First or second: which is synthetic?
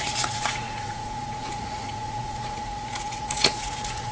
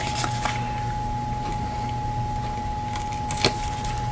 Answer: first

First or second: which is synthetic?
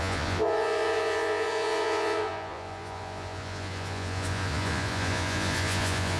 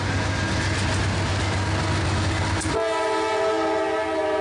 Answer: first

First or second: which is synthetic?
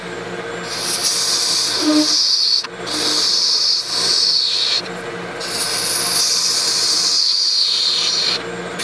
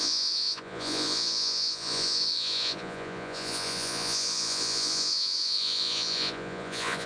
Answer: second